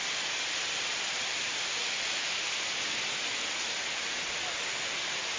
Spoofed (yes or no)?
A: no